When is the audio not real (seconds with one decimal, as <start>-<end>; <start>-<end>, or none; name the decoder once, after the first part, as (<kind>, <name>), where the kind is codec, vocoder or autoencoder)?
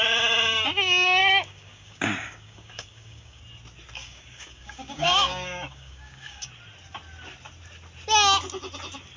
1.2-3.4 (codec, DAC); 4.0-6.5